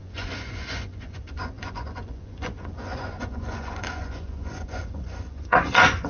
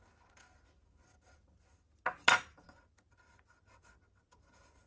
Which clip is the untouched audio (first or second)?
second